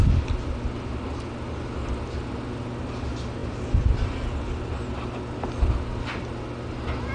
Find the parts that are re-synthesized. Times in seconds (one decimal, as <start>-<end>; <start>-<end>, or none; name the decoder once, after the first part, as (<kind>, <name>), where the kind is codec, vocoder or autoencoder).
none